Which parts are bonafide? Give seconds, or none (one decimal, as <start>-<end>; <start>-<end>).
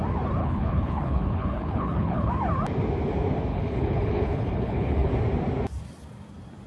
0.0-0.4; 2.3-3.5; 5.1-6.7